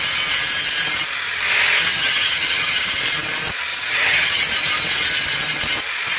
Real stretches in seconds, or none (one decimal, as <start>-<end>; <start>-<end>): 0.0-1.9; 2.9-3.7; 4.4-6.2